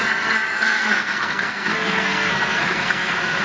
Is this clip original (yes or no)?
no